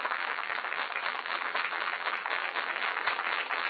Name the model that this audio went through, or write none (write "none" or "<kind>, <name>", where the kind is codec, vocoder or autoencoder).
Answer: vocoder, WaveNeXt